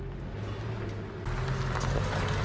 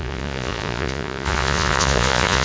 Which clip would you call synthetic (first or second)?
second